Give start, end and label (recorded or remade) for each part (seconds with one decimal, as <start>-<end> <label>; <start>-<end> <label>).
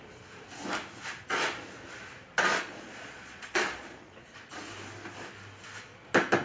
0.0-2.5 recorded; 2.5-4.6 remade; 4.6-6.4 recorded